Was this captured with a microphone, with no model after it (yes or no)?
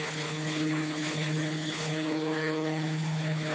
no